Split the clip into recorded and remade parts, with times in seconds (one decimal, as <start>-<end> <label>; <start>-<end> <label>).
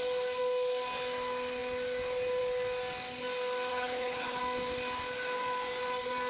0.0-3.7 recorded; 3.7-4.4 remade; 4.4-6.3 recorded